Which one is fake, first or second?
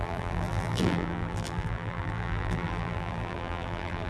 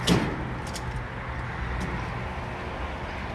first